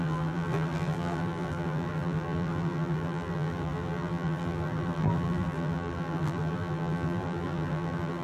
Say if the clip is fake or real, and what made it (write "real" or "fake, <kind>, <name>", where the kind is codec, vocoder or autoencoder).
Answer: fake, vocoder, BigVGAN v2